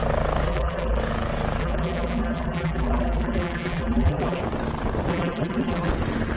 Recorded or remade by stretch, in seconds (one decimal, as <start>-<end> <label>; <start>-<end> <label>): 0.0-0.5 recorded; 0.5-1.0 remade; 1.0-1.6 recorded; 1.6-4.4 remade; 4.4-5.1 recorded; 5.1-5.9 remade; 5.9-6.4 recorded